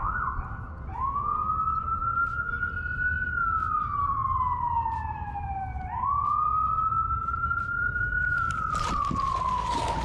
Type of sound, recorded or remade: recorded